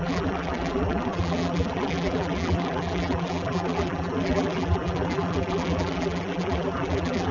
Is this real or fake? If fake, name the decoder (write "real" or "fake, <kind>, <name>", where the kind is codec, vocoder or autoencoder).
fake, vocoder, BigVGAN v2